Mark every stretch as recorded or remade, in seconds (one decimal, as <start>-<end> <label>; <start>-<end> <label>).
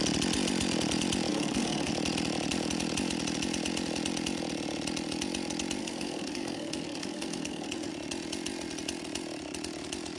0.0-1.3 recorded; 1.3-1.9 remade; 1.9-5.8 recorded; 5.8-7.9 remade; 7.9-10.2 recorded